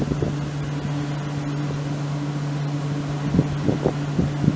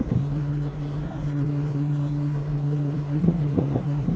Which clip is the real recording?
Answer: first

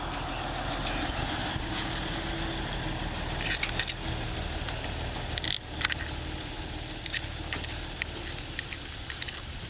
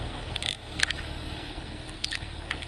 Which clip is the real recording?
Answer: first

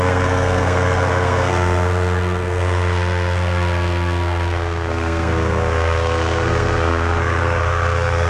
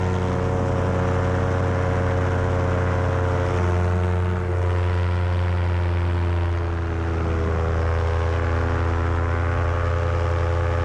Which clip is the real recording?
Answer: second